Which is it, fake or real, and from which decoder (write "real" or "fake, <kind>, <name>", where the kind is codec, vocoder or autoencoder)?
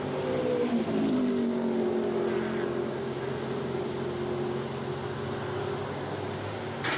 real